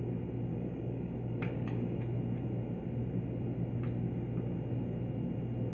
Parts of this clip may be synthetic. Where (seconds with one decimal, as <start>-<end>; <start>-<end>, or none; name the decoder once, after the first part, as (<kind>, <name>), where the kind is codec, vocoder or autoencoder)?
0.5-2.0 (codec, DAC)